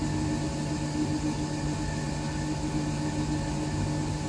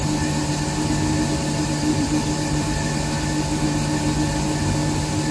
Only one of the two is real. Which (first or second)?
first